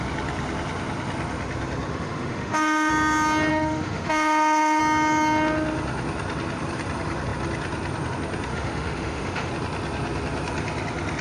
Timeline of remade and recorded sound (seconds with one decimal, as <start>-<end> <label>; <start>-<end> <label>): 0.0-1.9 recorded; 1.9-2.9 remade; 2.9-3.5 recorded; 3.5-4.8 remade; 4.8-8.5 recorded; 8.5-9.5 remade; 9.5-11.2 recorded